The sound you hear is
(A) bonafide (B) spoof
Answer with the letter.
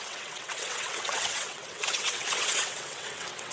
B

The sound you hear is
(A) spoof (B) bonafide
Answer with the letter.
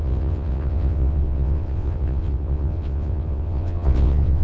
A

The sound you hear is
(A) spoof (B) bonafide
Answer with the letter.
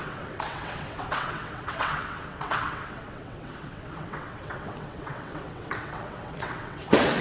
A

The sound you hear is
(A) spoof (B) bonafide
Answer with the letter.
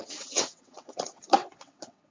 A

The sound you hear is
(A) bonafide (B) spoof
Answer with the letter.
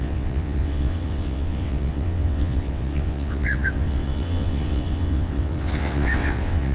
B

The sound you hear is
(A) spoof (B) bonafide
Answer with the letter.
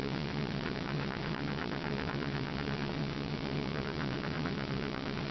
A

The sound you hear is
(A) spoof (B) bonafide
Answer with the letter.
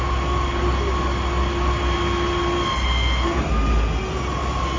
B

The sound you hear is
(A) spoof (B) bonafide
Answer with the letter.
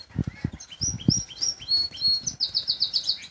B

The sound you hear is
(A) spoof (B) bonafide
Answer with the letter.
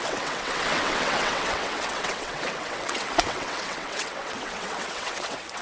A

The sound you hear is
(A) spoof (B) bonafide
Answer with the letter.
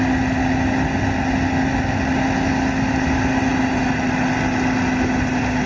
B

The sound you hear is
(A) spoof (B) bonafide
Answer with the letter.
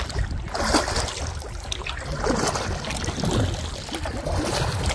B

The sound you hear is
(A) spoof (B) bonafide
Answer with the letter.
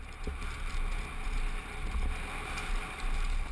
B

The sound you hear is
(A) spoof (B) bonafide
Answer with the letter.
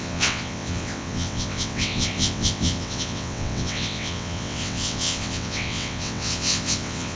A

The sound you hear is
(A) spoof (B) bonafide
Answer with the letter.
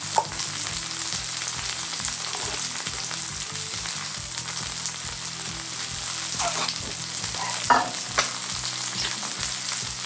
B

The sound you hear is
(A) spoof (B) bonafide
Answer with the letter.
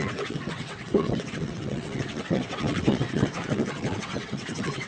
A